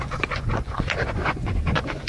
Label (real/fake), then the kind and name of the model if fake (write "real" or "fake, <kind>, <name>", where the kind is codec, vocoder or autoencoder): fake, vocoder, Vocos